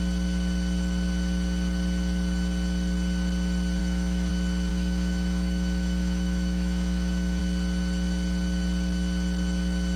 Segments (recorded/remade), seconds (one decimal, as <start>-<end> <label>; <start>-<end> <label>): 0.0-3.8 recorded; 3.8-4.3 remade; 4.3-4.7 recorded; 4.7-7.4 remade; 7.4-10.0 recorded